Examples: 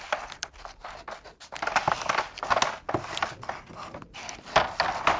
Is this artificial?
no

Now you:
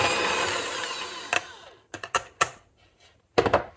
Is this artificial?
no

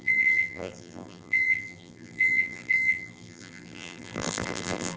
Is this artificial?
yes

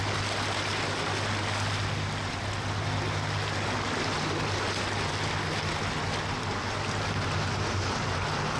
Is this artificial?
no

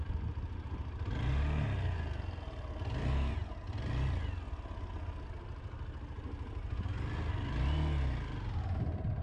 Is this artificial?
no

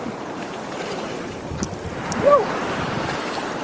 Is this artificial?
yes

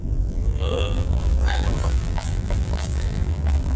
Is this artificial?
yes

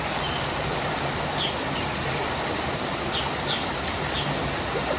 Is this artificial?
no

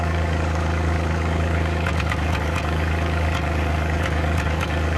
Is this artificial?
yes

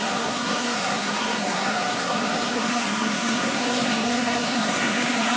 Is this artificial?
yes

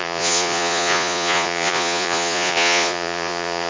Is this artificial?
yes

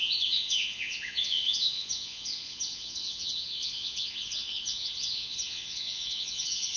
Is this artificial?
yes